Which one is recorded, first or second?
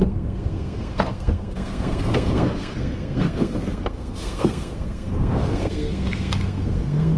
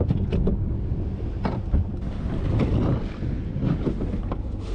second